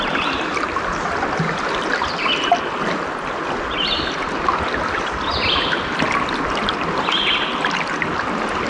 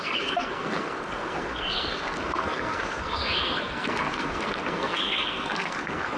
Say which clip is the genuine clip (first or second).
first